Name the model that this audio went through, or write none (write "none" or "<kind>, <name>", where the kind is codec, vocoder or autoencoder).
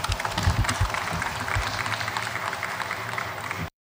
vocoder, BigVGAN v2